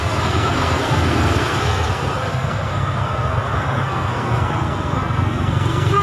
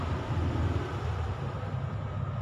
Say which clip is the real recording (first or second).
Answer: second